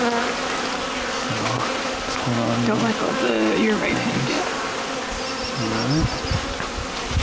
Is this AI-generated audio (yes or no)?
no